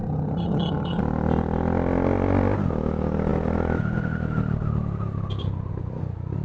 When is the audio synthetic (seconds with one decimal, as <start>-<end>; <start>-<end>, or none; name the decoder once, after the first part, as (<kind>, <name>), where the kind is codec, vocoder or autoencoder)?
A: 0.0-1.0 (vocoder, HiFi-GAN)